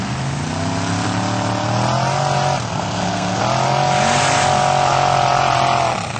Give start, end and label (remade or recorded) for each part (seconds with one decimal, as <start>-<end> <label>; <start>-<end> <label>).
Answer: 0.0-2.7 recorded; 2.7-3.4 remade; 3.4-6.2 recorded